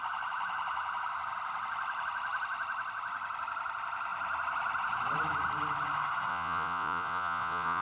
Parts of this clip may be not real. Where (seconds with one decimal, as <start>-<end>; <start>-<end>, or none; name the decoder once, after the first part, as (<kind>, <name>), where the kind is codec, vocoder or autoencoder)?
6.3-7.8 (vocoder, Vocos)